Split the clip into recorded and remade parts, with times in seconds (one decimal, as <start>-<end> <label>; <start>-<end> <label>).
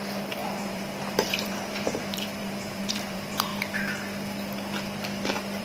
0.0-3.5 remade; 3.5-5.6 recorded